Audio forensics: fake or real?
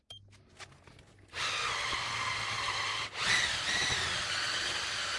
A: real